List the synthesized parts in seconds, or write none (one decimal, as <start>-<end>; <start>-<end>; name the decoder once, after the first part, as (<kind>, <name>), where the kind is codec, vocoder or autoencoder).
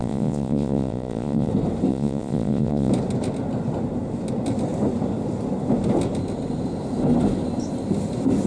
0.0-1.5 (vocoder, Vocos); 1.9-2.9